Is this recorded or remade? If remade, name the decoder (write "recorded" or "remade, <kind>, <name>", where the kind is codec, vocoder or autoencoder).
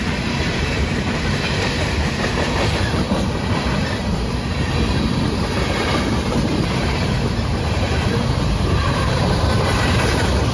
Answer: remade, vocoder, BigVGAN v2